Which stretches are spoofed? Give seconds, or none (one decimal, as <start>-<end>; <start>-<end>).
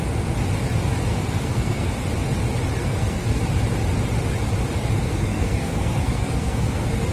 1.1-1.9; 2.8-3.4; 5.0-7.1